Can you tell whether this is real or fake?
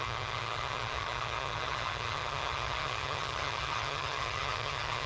fake